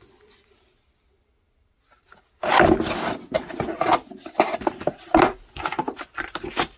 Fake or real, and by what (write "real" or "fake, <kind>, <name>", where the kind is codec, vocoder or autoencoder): real